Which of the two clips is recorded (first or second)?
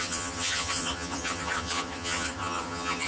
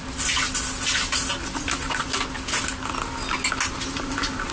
second